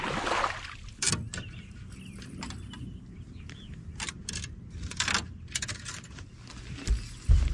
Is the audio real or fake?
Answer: real